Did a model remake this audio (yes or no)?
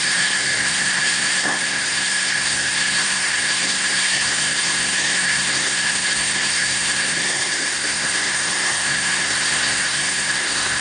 yes